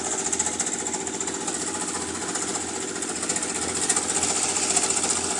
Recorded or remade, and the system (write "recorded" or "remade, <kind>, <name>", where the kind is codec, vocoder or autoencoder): recorded